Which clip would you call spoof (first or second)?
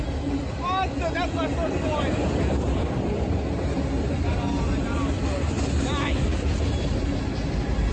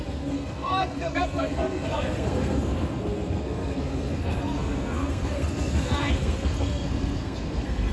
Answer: second